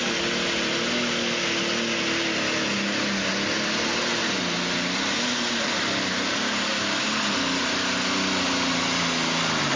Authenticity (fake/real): real